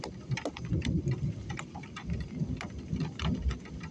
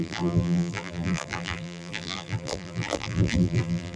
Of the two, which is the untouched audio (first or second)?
first